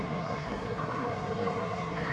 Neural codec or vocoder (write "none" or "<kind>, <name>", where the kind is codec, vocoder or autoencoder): codec, SNAC